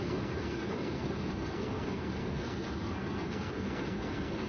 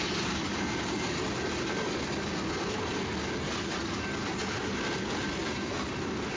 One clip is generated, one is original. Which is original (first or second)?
second